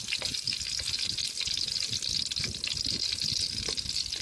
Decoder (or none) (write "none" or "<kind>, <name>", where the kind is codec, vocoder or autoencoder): none